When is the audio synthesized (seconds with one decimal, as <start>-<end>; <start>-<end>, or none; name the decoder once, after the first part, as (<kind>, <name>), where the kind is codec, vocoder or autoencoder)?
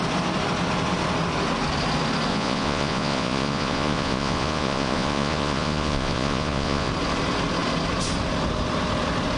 2.3-6.9 (vocoder, Vocos)